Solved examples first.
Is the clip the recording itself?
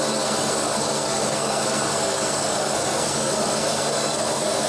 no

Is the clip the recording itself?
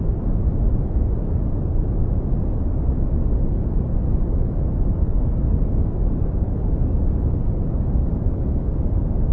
yes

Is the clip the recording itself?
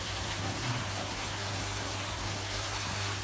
no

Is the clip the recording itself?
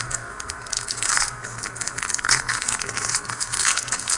no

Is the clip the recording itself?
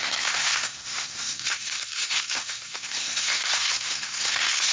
no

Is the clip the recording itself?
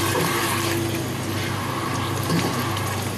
yes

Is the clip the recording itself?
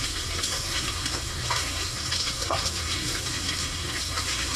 no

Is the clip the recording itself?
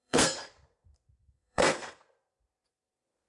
no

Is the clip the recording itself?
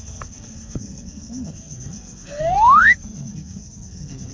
no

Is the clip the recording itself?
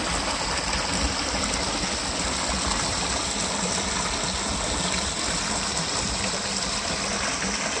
yes